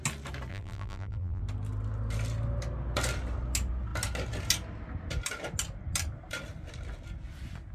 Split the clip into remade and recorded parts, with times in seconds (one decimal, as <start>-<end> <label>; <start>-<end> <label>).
0.0-0.5 recorded; 0.5-1.4 remade; 1.4-7.7 recorded